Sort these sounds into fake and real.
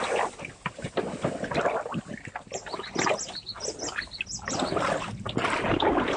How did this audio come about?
real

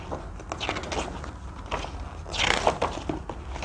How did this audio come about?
real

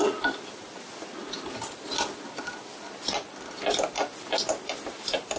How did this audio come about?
real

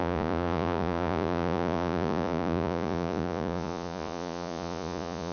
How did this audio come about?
fake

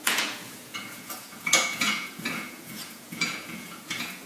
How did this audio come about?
fake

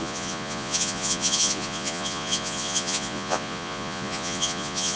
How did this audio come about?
fake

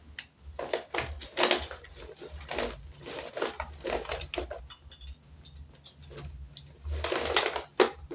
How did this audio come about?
real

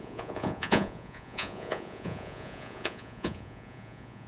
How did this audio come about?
fake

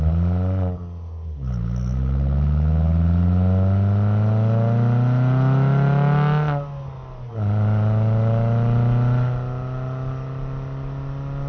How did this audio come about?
real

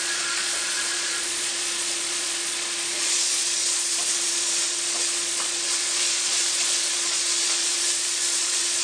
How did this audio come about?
fake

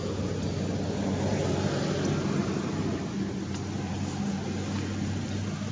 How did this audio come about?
real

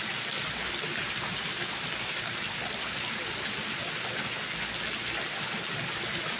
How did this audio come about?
real